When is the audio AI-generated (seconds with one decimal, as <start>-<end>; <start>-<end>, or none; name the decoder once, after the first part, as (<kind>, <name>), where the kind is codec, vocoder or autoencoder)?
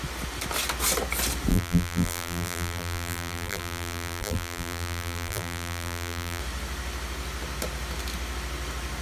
1.5-6.4 (vocoder, BigVGAN v2)